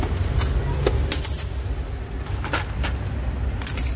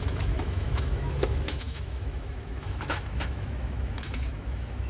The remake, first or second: second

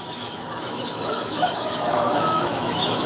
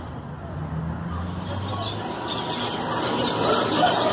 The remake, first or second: first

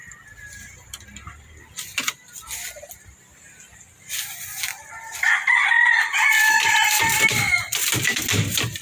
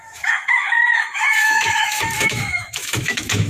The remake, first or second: second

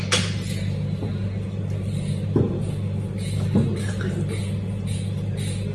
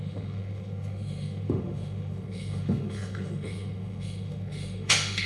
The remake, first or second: second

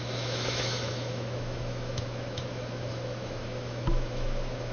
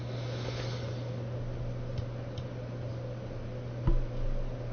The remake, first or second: first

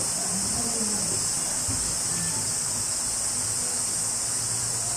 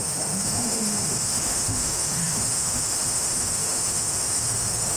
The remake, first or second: second